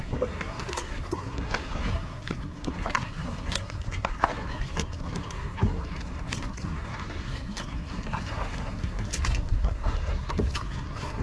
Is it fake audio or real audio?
fake